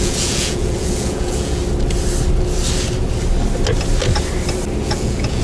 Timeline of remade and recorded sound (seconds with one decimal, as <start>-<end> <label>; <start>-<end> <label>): 0.0-1.6 remade; 1.6-4.8 recorded; 4.8-5.4 remade